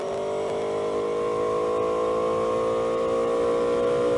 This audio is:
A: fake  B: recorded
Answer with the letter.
B